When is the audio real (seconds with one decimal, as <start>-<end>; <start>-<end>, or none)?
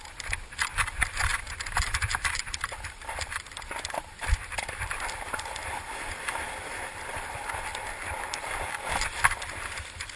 0.0-1.3; 3.6-4.4; 7.9-10.2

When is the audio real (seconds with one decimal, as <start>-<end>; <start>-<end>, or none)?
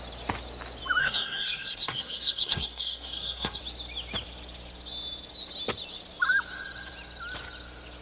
0.0-1.0; 3.6-8.0